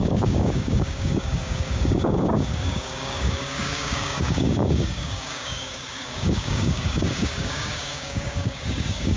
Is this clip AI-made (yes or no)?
yes